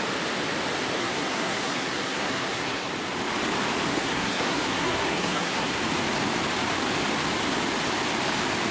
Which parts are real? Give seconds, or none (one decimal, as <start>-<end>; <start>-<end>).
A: 0.0-1.0; 2.9-3.9; 5.8-8.7